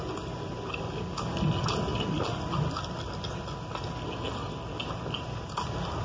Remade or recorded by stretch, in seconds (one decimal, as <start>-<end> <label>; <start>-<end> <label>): 0.0-6.0 recorded